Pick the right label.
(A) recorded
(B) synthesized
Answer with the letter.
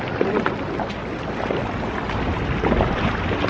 A